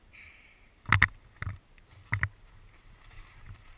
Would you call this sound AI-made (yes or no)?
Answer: no